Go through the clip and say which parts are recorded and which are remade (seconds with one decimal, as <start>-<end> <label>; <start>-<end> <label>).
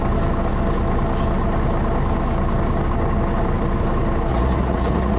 0.0-4.3 recorded; 4.3-5.2 remade